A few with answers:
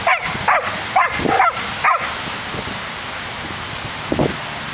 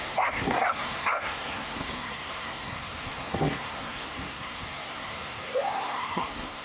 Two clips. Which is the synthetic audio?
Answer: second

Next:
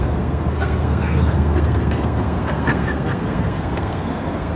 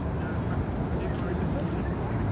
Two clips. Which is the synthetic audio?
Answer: first